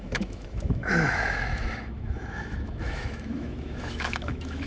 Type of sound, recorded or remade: remade